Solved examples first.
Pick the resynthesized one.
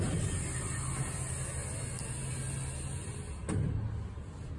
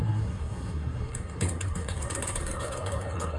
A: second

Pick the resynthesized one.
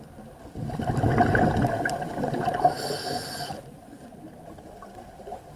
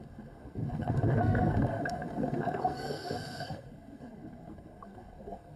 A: second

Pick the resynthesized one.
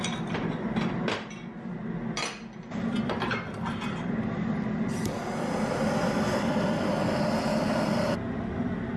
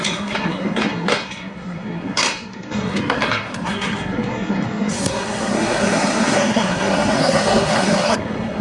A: second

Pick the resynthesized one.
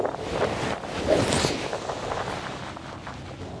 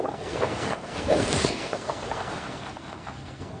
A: second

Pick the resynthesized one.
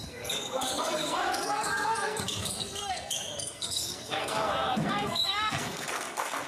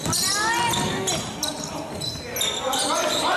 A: first